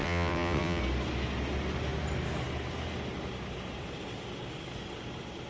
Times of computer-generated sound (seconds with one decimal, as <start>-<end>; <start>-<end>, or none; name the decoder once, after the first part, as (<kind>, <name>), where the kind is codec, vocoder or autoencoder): 0.0-0.8 (vocoder, WaveNeXt)

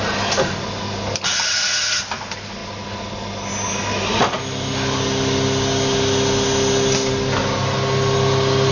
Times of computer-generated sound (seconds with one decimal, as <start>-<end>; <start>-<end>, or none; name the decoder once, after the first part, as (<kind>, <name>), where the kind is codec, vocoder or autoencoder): none

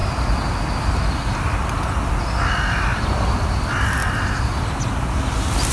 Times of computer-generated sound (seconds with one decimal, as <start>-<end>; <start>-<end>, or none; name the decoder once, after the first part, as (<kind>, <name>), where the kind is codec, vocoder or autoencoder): none

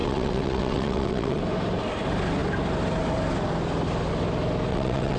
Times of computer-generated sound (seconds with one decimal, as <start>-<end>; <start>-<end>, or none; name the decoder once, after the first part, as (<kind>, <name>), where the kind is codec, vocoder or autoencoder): 0.0-1.4 (vocoder, WaveNeXt); 4.7-5.2

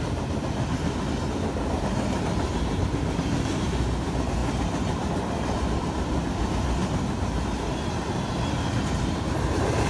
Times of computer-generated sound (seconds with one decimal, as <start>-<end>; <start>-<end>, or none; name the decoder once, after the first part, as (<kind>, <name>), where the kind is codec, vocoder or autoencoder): none

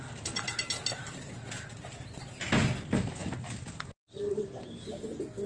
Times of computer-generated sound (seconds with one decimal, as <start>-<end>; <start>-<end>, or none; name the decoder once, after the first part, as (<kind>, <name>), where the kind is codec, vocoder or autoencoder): none